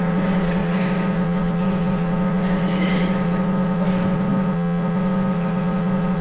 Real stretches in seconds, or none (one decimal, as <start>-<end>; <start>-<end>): none